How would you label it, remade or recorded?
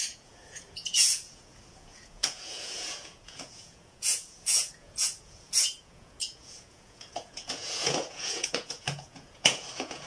remade